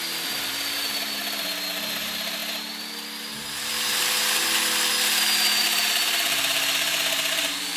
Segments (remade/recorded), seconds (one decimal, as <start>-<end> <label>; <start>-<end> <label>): 0.0-1.2 remade; 1.2-2.0 recorded; 2.0-2.4 remade; 2.4-5.6 recorded; 5.6-7.8 remade